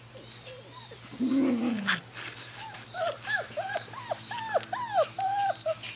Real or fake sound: real